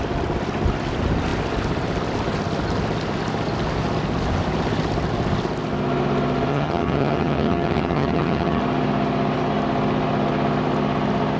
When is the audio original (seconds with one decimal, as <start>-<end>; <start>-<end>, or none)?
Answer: 0.0-6.5; 8.6-11.4